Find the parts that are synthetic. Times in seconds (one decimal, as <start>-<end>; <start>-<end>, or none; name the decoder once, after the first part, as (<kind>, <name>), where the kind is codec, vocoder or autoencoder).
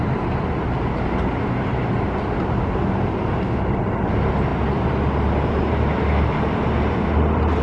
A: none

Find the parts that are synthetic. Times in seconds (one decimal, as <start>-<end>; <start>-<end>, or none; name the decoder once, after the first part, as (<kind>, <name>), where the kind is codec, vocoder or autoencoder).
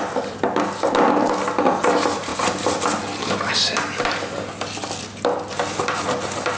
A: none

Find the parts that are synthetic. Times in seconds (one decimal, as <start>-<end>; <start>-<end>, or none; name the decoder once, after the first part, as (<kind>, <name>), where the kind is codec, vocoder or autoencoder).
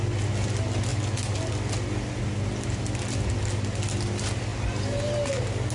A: none